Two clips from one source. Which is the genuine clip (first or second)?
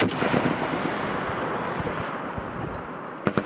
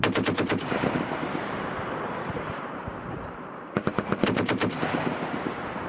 first